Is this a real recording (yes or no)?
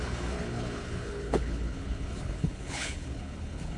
no